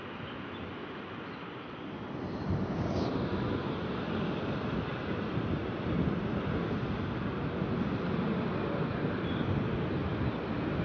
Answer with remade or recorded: recorded